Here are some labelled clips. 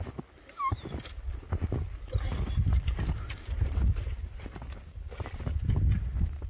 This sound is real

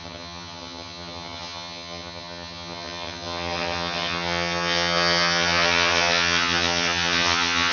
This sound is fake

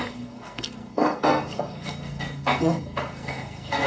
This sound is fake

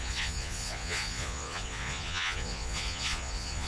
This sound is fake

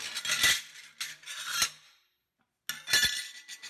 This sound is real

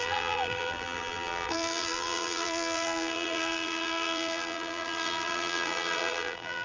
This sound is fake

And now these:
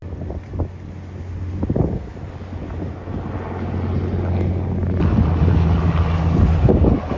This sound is real